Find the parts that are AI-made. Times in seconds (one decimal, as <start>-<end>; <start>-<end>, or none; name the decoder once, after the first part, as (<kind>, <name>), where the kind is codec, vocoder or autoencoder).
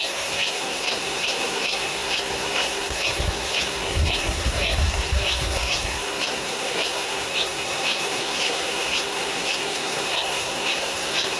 0.0-11.4 (codec, SNAC)